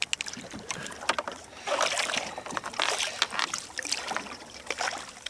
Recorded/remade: recorded